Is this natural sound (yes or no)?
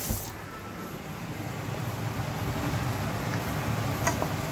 yes